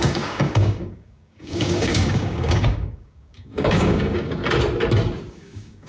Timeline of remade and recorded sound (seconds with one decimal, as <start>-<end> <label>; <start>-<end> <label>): 0.0-4.4 remade; 4.4-5.3 recorded; 5.3-5.9 remade